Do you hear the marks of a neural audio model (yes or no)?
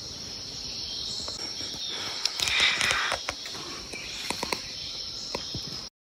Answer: no